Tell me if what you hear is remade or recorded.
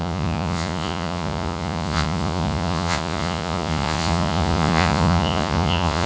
remade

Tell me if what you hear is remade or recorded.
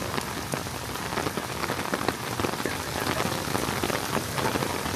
recorded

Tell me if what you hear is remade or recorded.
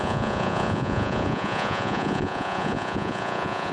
remade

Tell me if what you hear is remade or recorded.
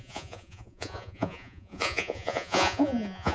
remade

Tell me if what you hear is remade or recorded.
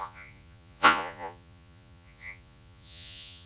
remade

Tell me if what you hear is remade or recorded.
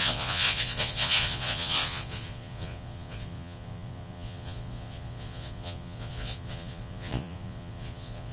remade